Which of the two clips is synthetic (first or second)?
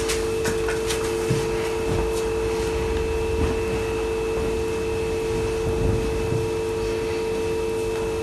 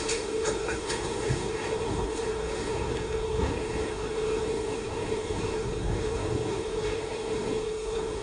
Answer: second